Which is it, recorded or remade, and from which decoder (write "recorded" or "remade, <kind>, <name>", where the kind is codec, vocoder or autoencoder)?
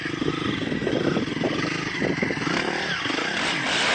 recorded